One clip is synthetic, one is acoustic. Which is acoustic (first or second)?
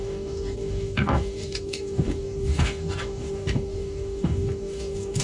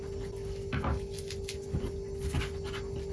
second